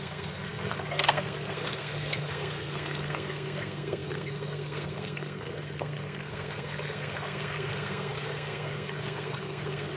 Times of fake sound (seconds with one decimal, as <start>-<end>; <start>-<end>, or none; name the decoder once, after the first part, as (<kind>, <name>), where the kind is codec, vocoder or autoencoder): 0.0-10.0 (codec, SNAC)